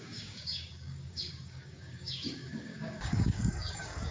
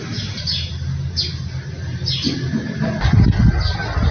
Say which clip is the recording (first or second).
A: second